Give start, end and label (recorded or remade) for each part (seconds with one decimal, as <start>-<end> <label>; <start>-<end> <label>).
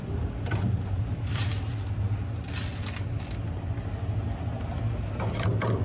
0.0-1.5 remade; 1.5-5.0 recorded; 5.0-5.8 remade